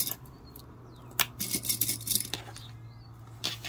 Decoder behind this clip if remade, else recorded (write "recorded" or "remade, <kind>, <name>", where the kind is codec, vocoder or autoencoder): recorded